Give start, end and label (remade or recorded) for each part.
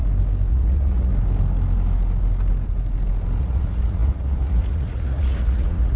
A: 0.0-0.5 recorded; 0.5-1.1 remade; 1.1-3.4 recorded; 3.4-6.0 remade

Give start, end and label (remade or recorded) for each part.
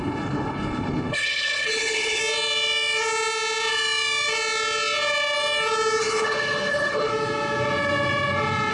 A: 0.0-2.2 remade; 2.2-6.0 recorded; 6.0-7.1 remade; 7.1-8.7 recorded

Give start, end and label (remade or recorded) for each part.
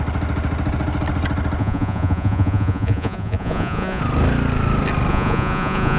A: 0.0-1.6 recorded; 1.6-4.0 remade; 4.0-5.1 recorded; 5.1-6.0 remade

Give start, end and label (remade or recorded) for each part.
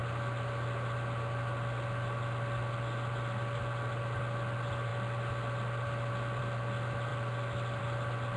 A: 0.0-8.4 recorded